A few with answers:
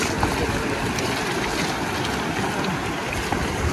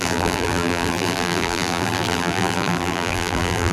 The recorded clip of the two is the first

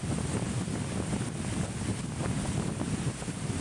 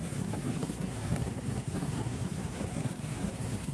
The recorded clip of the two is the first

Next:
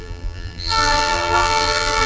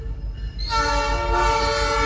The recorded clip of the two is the second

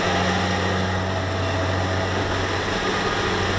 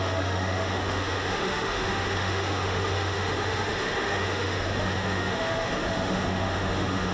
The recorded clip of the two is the first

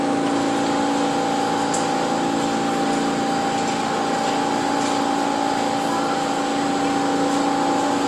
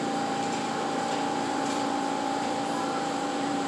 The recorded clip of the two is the first